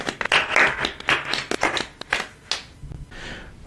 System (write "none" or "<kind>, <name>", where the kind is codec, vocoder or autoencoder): none